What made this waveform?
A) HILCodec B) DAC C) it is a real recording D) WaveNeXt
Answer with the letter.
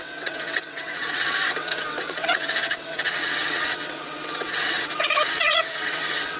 D